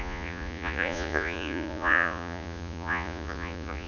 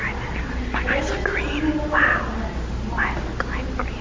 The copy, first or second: first